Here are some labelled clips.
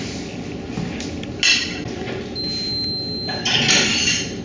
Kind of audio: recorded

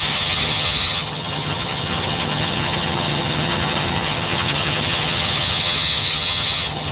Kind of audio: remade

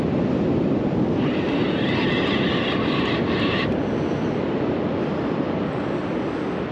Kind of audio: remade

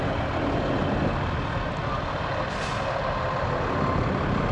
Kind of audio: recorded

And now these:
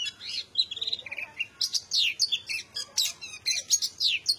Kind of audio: recorded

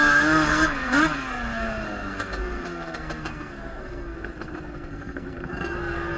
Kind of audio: remade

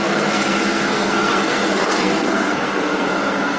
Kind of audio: remade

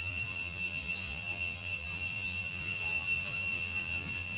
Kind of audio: remade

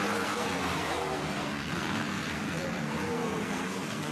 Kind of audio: remade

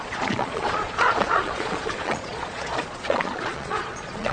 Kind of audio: remade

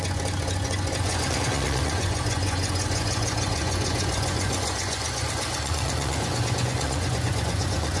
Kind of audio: remade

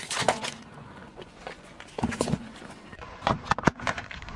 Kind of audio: remade